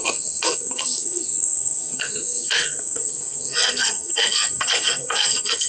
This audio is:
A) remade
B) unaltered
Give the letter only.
A